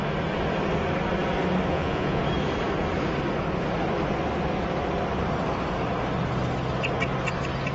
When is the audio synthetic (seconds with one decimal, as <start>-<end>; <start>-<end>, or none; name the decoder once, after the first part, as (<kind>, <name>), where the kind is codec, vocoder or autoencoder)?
1.7-2.2 (vocoder, Vocos)